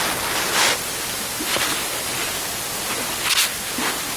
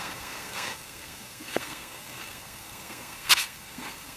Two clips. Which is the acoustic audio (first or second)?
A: first